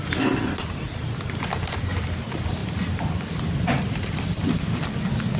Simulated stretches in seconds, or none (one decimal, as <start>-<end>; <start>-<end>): 2.6-4.9